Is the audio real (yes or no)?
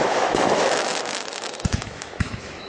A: no